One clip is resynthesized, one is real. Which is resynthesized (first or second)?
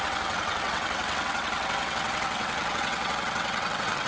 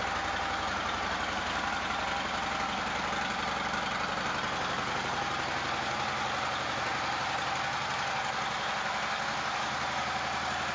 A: first